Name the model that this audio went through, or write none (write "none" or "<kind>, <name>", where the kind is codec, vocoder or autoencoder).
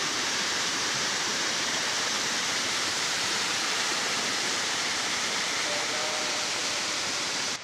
vocoder, BigVGAN v2